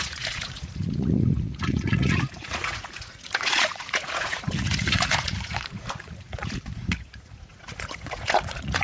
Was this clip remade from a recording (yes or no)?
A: yes